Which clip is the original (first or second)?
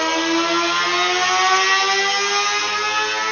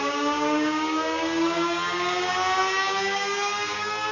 first